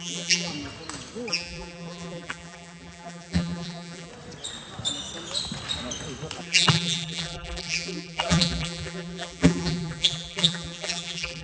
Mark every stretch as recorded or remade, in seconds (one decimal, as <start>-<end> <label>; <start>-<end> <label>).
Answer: 0.0-0.5 remade; 0.5-1.3 recorded; 1.3-4.1 remade; 4.1-6.4 recorded; 6.4-11.4 remade